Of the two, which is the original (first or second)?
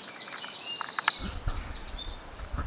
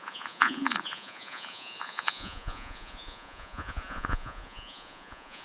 first